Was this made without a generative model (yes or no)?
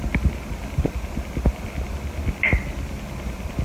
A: yes